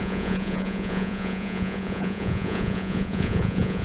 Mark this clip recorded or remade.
remade